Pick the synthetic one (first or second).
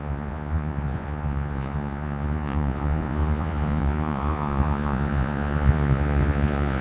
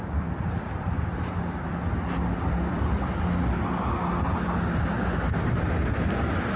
first